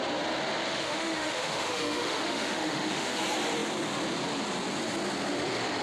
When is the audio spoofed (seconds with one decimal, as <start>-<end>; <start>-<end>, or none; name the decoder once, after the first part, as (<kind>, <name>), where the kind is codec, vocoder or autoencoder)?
0.7-3.2 (autoencoder, DAC-VAE)

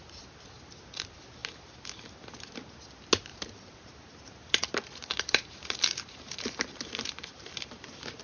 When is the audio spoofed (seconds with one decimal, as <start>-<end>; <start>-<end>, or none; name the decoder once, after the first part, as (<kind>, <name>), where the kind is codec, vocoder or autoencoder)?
3.3-8.2 (vocoder, BigVGAN v2)

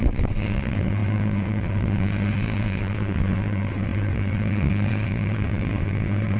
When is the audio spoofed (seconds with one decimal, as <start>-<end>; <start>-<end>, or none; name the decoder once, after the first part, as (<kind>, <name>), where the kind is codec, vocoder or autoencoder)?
0.0-6.4 (vocoder, WaveNeXt)